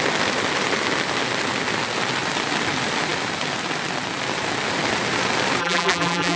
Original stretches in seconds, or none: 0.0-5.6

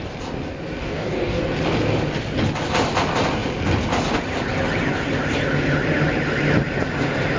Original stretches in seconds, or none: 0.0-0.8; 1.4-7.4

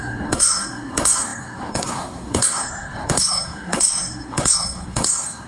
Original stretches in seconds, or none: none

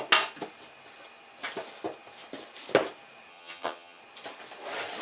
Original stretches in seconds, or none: 0.0-3.3; 4.0-5.0

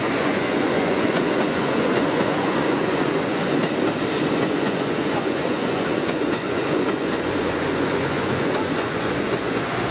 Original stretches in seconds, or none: 3.6-4.3

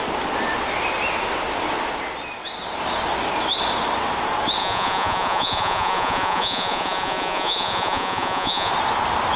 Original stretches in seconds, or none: 0.0-4.6; 8.7-9.4